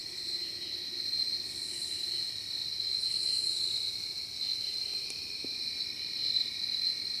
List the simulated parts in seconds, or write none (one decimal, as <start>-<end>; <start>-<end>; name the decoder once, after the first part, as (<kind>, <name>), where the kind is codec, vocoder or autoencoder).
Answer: 0.0-1.0 (vocoder, BigVGAN v2); 4.7-5.8